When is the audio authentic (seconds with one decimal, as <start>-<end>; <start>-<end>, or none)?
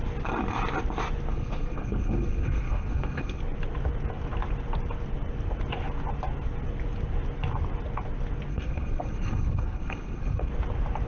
0.0-1.3; 3.4-8.5; 10.5-11.1